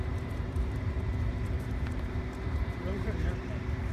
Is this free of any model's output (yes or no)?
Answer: no